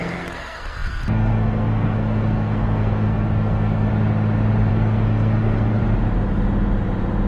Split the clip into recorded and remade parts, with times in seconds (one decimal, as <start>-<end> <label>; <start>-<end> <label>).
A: 0.0-3.9 remade; 3.9-4.7 recorded; 4.7-5.8 remade; 5.8-7.3 recorded